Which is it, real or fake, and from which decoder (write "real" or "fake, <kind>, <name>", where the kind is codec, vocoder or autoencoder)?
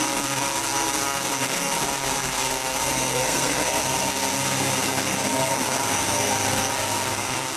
fake, codec, SNAC